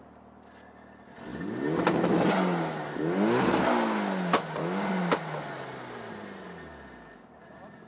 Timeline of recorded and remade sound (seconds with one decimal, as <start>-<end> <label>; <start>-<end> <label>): 0.0-7.9 recorded